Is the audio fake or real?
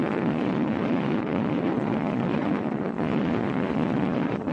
fake